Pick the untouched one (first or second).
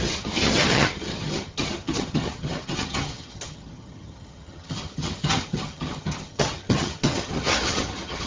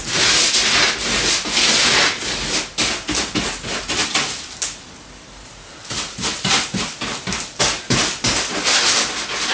second